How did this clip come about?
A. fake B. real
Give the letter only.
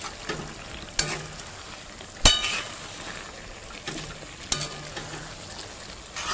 B